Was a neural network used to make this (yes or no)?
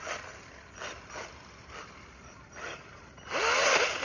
no